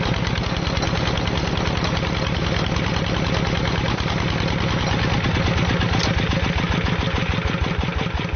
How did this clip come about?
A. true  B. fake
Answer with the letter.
A